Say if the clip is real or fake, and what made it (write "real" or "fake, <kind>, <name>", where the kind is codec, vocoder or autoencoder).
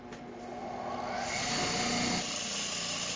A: real